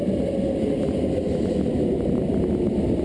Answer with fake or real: real